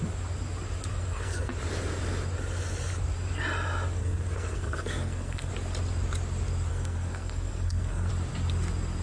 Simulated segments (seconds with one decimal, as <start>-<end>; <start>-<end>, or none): 0.9-1.5; 4.0-5.5; 6.7-8.1